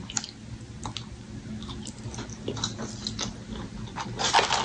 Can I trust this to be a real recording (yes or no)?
yes